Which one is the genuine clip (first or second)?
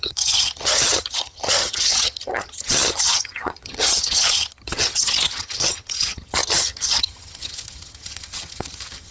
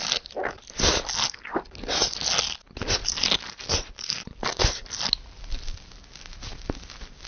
second